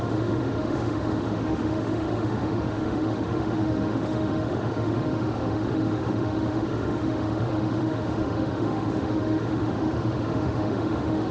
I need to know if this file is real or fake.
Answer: fake